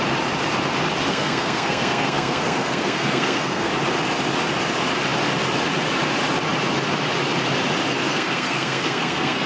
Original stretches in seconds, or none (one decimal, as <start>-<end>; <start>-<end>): 0.0-1.1; 3.7-8.1